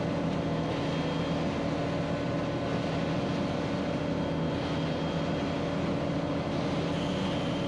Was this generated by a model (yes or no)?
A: no